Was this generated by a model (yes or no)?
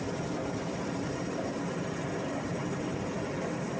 no